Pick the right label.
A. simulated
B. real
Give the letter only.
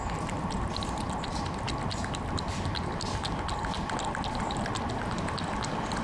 B